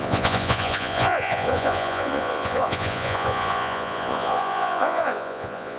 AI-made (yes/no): yes